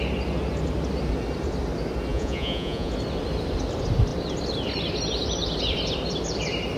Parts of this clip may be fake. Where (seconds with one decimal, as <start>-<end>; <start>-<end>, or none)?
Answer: 2.1-2.9